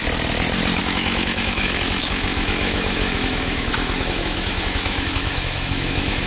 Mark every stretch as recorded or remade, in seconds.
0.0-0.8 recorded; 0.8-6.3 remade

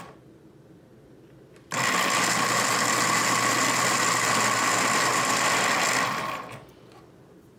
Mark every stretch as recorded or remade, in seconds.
0.0-7.6 recorded

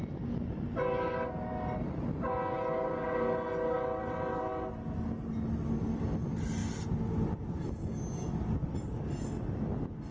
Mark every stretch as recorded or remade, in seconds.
0.0-10.1 recorded

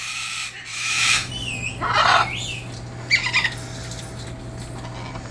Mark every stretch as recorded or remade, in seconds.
0.0-0.7 recorded; 0.7-1.3 remade; 1.3-5.3 recorded